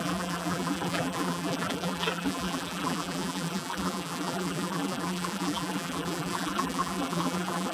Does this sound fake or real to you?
fake